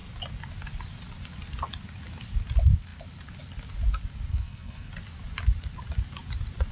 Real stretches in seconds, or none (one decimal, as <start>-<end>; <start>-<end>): 0.0-4.3; 4.9-6.7